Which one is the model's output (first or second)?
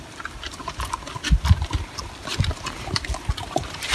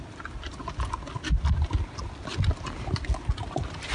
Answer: first